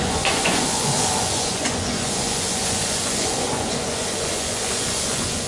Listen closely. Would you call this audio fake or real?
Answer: fake